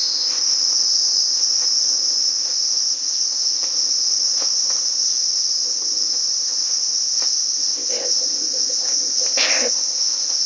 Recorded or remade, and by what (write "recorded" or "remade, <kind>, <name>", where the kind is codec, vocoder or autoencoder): remade, codec, ZipCodec